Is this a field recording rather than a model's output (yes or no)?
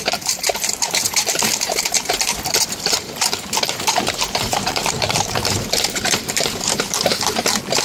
no